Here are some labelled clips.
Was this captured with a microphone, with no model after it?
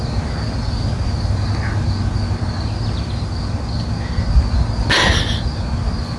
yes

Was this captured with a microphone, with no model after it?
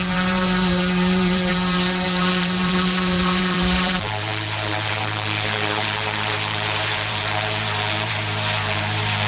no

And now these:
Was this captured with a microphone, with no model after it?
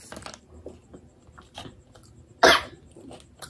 yes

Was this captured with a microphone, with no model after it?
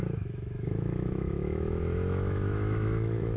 no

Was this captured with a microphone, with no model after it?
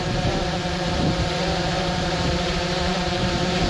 no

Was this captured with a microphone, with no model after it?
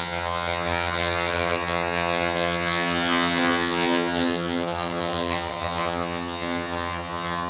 no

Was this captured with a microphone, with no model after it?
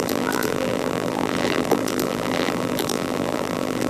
no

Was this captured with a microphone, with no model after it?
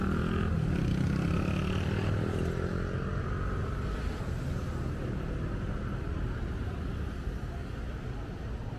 yes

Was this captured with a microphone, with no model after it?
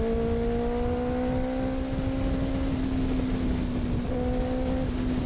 yes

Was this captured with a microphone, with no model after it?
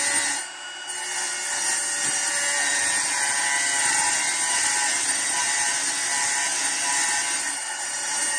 yes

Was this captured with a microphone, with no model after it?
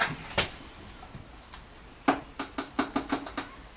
yes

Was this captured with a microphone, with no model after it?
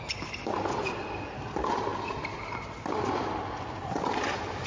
yes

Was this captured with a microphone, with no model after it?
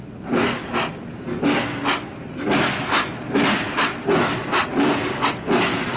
yes